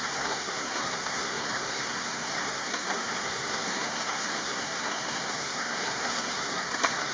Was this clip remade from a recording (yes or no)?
yes